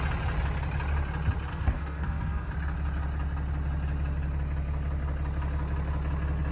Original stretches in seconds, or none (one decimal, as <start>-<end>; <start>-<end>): 0.0-1.5; 2.5-6.5